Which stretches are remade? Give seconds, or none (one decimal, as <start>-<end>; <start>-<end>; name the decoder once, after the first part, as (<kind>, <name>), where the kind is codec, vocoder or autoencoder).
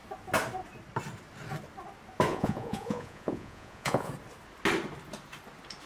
2.3-4.1 (vocoder, Vocos)